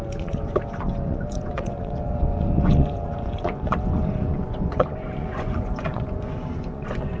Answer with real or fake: fake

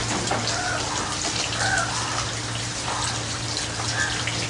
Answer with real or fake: real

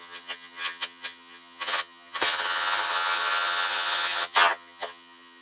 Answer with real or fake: fake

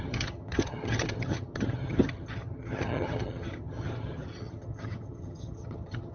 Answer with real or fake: fake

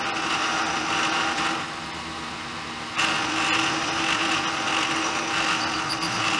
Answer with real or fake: real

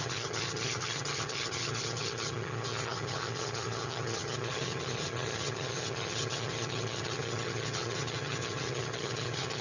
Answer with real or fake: fake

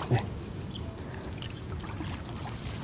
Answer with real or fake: real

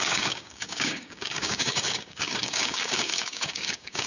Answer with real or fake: fake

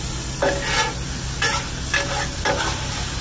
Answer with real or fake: real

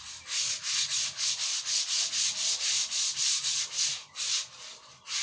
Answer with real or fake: real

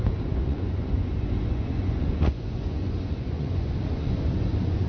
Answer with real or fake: fake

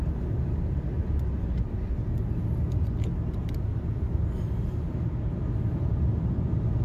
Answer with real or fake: real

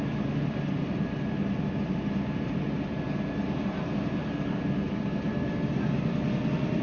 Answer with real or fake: real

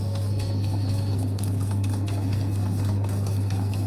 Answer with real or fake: fake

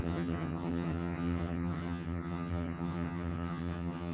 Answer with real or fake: fake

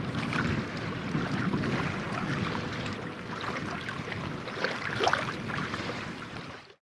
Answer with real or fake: real